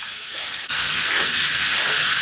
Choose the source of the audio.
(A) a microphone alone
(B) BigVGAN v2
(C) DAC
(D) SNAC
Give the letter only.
D